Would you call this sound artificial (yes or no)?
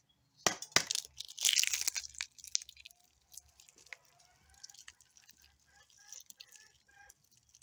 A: no